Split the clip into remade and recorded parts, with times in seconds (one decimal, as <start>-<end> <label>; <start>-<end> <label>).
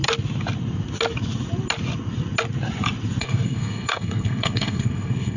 0.0-3.2 recorded; 3.2-5.4 remade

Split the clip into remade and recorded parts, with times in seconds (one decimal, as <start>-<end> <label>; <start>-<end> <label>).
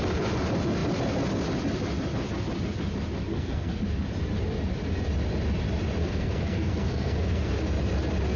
0.0-3.3 recorded; 3.3-3.8 remade; 3.8-6.0 recorded; 6.0-7.5 remade; 7.5-8.4 recorded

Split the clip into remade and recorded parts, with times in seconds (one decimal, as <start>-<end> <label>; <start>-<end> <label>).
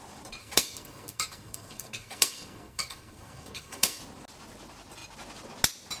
0.0-0.4 recorded; 0.4-4.0 remade; 4.0-6.0 recorded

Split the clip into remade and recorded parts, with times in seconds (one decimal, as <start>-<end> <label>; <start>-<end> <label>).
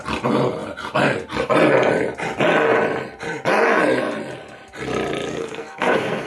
0.0-5.3 recorded; 5.3-6.3 remade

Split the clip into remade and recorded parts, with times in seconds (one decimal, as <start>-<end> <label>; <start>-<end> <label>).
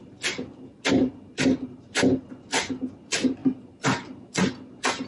0.0-5.1 recorded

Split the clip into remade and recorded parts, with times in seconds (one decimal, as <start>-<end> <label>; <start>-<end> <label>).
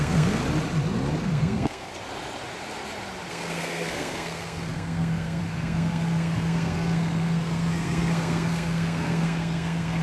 0.0-0.4 remade; 0.4-1.2 recorded; 1.2-1.9 remade; 1.9-3.3 recorded; 3.3-10.0 remade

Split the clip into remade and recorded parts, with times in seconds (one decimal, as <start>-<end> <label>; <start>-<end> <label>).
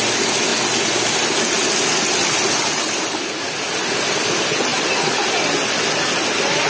0.0-6.7 recorded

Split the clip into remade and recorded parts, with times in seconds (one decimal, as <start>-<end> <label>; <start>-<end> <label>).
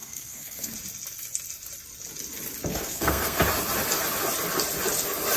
0.0-0.7 remade; 0.7-2.7 recorded; 2.7-3.4 remade; 3.4-5.4 recorded